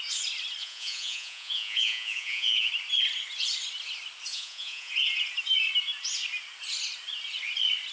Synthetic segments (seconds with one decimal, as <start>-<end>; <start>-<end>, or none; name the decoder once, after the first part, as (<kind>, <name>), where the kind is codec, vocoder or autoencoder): 0.6-2.7 (vocoder, Vocos); 4.3-4.9